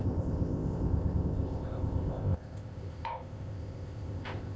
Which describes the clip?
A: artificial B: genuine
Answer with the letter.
A